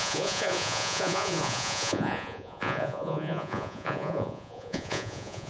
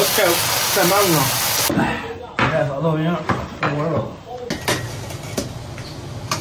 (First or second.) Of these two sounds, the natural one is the second